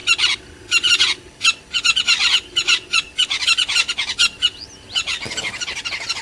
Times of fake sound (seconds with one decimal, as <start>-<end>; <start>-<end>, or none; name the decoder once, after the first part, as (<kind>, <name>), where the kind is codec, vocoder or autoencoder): none